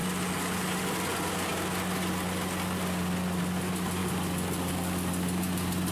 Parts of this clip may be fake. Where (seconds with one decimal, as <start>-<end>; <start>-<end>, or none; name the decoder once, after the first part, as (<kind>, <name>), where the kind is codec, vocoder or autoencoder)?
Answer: none